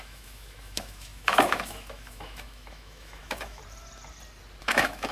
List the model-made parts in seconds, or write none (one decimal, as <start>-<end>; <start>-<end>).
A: 0.0-3.6; 4.6-5.1